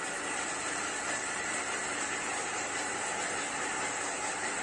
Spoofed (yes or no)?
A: no